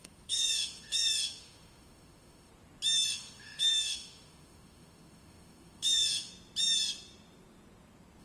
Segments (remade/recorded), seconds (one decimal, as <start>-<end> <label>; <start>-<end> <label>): 0.0-2.5 remade; 2.5-3.1 recorded; 3.1-6.3 remade; 6.3-8.2 recorded